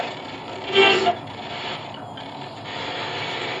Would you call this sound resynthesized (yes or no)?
no